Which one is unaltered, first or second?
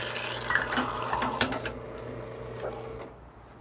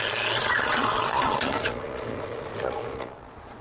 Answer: first